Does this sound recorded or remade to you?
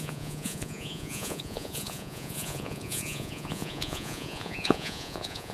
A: remade